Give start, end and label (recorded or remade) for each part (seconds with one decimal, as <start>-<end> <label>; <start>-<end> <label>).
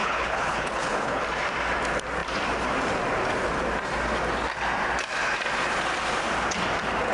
0.0-1.2 remade; 1.2-7.1 recorded